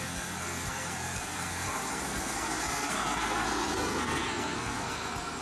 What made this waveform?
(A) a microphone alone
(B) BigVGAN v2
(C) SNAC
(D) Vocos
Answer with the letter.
C